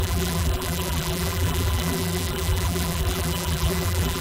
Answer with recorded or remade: remade